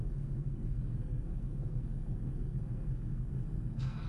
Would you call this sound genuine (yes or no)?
no